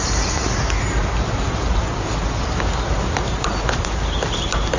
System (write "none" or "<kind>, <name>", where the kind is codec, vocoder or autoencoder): none